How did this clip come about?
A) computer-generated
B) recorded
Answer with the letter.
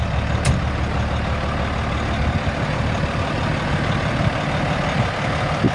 B